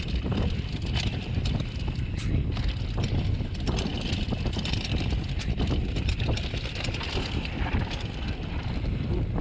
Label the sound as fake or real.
real